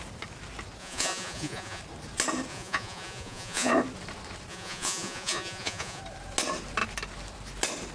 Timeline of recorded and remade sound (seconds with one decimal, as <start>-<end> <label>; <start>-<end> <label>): 0.0-0.8 recorded; 0.8-1.8 remade; 1.8-2.5 recorded; 2.5-3.7 remade; 3.7-4.5 recorded; 4.5-6.0 remade; 6.0-7.9 recorded